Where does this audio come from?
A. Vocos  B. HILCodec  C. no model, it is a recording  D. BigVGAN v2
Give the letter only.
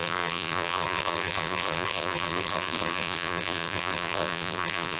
D